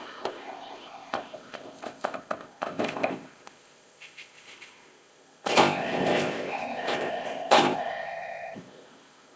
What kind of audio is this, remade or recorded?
remade